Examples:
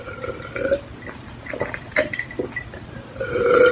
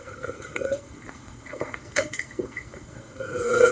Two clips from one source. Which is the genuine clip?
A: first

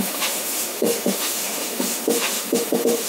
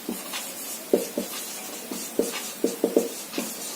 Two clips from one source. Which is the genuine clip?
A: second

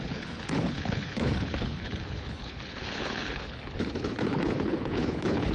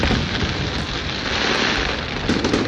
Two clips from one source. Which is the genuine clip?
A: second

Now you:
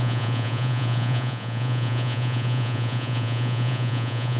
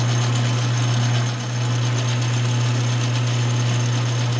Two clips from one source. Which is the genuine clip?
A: second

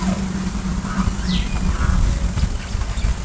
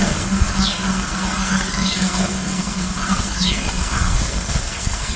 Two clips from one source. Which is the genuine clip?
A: first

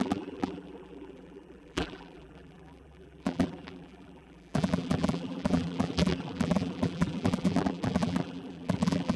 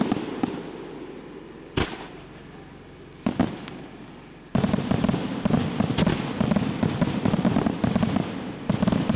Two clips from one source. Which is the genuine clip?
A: second